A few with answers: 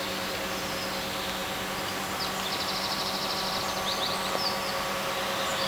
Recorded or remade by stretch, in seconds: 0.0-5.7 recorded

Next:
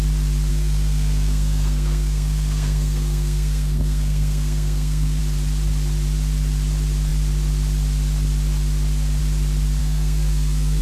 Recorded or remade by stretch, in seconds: 0.0-0.5 recorded; 0.5-5.2 remade; 5.2-9.8 recorded; 9.8-10.8 remade

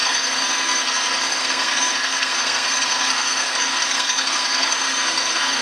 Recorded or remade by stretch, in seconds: 0.0-5.6 remade

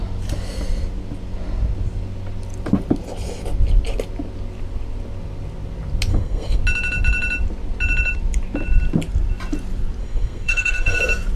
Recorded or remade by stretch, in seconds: 0.0-6.1 recorded; 6.1-6.6 remade; 6.6-10.0 recorded; 10.0-11.0 remade; 11.0-11.4 recorded